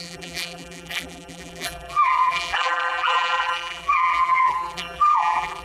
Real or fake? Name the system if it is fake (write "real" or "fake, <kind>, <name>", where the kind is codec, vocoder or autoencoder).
fake, vocoder, BigVGAN v2